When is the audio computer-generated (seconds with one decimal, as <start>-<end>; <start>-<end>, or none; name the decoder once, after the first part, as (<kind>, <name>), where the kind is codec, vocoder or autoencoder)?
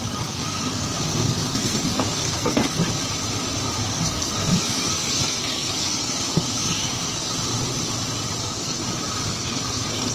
0.0-2.8 (codec, SNAC); 3.9-7.3; 8.4-8.8; 9.3-10.1